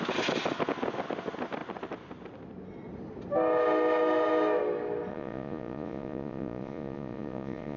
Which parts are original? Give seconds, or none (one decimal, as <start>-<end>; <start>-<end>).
0.0-5.1